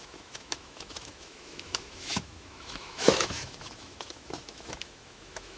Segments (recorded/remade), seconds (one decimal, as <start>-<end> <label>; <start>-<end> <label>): 0.0-5.6 remade